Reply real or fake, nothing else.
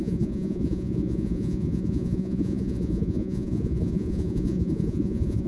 fake